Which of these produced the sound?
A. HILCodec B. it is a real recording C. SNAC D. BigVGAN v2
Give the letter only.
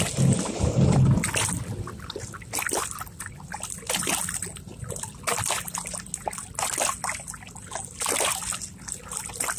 B